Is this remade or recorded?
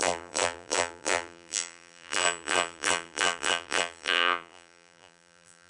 remade